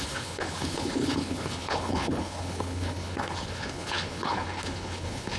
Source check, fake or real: fake